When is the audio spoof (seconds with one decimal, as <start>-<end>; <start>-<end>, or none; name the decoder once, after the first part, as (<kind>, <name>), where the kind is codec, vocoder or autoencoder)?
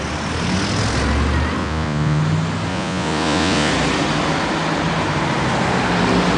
1.6-2.2 (vocoder, Vocos); 2.7-3.7